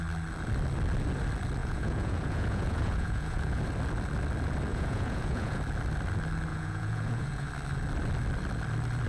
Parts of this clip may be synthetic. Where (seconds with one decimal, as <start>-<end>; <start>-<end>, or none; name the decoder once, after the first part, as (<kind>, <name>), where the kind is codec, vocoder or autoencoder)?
1.6-3.6 (vocoder, Vocos); 4.7-5.6; 6.5-7.5